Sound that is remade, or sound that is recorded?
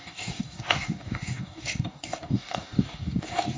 remade